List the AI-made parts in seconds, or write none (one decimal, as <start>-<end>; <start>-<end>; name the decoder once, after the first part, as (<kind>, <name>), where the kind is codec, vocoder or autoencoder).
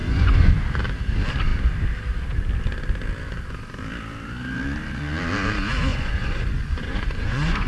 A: 0.0-0.5 (vocoder, Vocos); 5.9-7.7